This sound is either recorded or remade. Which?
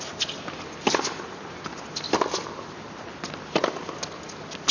recorded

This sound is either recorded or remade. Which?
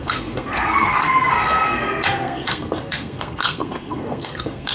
remade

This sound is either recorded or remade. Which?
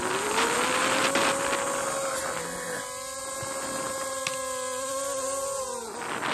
recorded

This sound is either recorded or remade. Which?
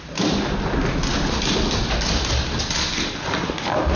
recorded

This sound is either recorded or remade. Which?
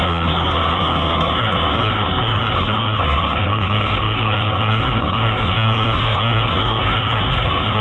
remade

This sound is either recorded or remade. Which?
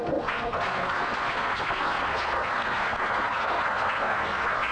remade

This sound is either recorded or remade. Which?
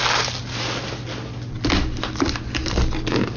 recorded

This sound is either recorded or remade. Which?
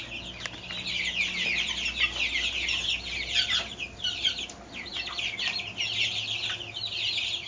recorded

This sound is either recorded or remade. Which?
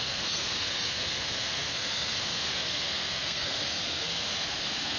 remade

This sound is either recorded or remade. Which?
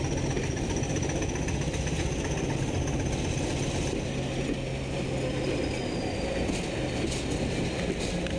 recorded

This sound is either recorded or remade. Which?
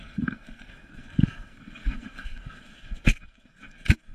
remade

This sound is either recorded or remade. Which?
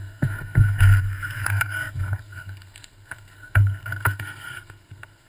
remade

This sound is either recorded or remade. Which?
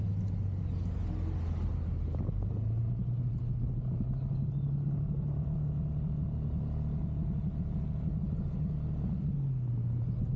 recorded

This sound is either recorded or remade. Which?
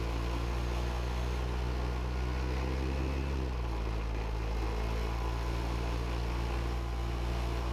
recorded